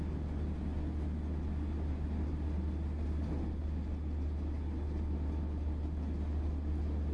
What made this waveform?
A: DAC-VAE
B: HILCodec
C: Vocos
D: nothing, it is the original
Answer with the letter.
D